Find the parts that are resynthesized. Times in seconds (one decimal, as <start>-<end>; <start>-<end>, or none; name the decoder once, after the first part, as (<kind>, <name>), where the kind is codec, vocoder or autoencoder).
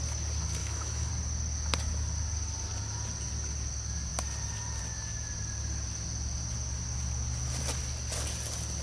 0.6-1.1 (autoencoder, DAC-VAE)